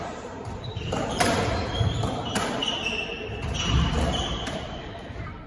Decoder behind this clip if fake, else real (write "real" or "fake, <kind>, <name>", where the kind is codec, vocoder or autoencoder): fake, vocoder, BigVGAN v2